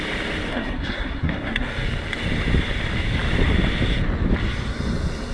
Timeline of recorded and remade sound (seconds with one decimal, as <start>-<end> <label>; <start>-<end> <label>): 0.0-0.5 recorded; 0.5-1.7 remade; 1.7-5.3 recorded